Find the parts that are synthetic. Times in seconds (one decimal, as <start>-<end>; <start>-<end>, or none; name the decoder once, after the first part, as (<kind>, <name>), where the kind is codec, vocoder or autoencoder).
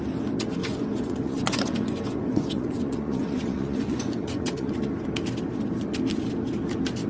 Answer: 0.6-4.9 (vocoder, Vocos)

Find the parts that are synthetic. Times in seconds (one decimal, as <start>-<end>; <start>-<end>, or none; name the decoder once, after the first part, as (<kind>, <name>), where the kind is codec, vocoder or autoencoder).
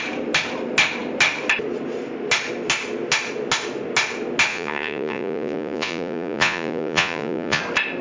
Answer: 4.5-7.6 (vocoder, Vocos)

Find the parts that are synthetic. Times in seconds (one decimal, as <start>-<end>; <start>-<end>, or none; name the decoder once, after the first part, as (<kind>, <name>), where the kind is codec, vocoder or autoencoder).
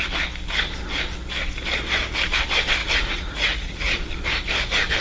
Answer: 2.8-4.0 (vocoder, Vocos)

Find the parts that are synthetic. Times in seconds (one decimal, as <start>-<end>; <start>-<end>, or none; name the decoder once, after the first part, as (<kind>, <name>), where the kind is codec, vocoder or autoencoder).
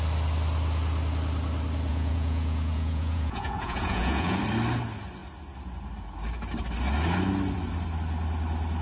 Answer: 1.9-4.4 (vocoder, Vocos)